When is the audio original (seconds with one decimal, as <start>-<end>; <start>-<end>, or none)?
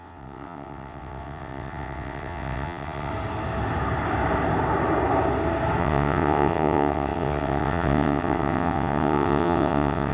3.1-5.8